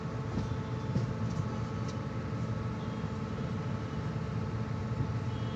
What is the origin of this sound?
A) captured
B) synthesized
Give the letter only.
A